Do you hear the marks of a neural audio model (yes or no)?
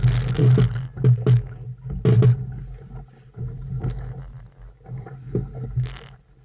no